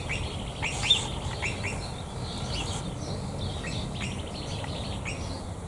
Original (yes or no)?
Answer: yes